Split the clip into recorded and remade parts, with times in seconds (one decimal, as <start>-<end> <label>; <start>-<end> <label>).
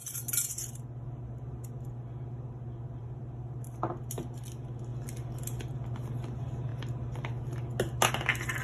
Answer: 0.0-8.6 recorded